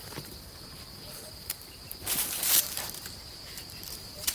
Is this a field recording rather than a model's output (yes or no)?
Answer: no